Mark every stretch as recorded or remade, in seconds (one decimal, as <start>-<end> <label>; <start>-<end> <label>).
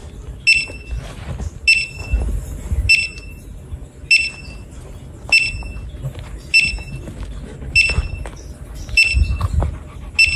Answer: 0.0-10.4 recorded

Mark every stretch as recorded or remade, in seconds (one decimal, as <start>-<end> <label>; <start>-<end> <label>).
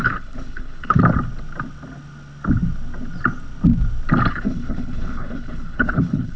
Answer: 0.0-1.0 remade; 1.0-4.3 recorded; 4.3-6.4 remade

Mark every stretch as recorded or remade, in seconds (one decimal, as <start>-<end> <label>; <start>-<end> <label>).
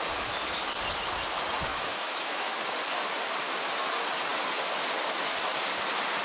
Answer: 0.0-1.7 recorded; 1.7-2.6 remade; 2.6-6.2 recorded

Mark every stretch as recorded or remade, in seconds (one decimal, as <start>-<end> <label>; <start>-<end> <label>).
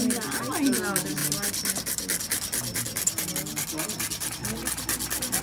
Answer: 0.0-5.4 recorded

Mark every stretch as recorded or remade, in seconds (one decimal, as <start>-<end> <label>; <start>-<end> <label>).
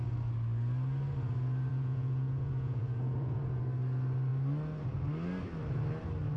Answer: 0.0-1.7 recorded; 1.7-3.6 remade; 3.6-6.4 recorded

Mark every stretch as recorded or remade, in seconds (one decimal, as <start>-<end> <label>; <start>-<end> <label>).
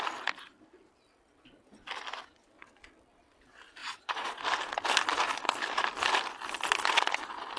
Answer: 0.0-3.8 recorded; 3.8-4.4 remade; 4.4-7.6 recorded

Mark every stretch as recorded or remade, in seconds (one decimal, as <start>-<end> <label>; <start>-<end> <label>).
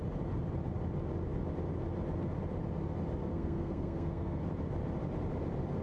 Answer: 0.0-3.2 recorded; 3.2-4.5 remade; 4.5-5.8 recorded